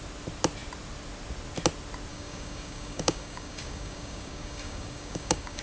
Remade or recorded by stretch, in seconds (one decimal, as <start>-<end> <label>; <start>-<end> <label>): 0.0-2.1 recorded; 2.1-5.6 remade